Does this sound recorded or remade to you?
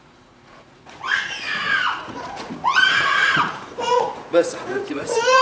remade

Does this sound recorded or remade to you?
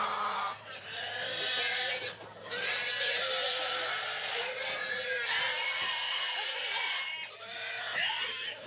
recorded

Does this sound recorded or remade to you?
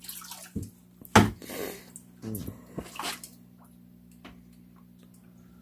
recorded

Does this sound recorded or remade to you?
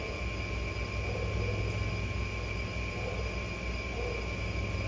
recorded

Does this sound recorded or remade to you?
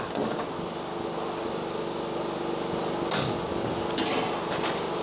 recorded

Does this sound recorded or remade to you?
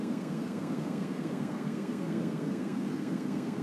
remade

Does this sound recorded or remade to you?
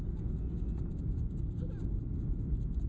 recorded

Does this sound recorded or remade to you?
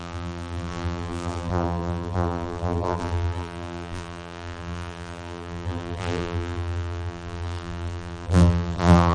remade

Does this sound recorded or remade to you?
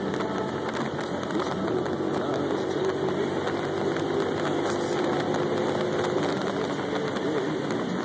recorded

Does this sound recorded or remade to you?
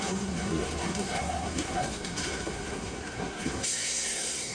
remade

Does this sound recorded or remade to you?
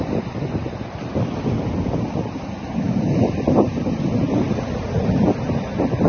recorded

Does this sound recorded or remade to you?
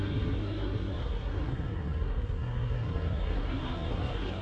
remade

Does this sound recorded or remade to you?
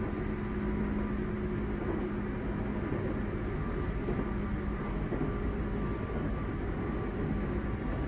recorded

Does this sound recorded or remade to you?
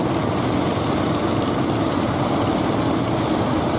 recorded